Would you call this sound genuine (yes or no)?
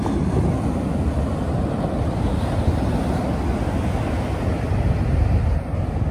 yes